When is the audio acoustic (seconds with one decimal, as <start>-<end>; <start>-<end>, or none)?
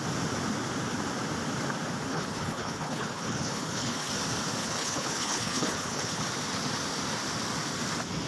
0.0-2.1; 4.1-4.6; 6.2-8.3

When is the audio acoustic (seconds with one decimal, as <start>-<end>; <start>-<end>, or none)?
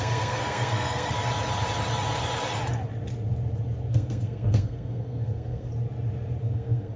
1.2-3.9; 5.7-6.4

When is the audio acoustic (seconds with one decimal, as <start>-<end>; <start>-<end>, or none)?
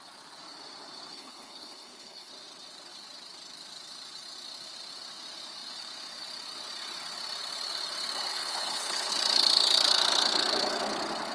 0.0-1.1; 2.3-8.3; 9.1-11.3